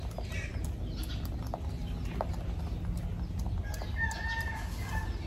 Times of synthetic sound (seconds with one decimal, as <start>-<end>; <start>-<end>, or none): none